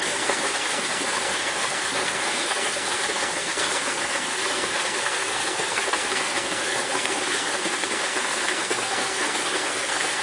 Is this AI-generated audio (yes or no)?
yes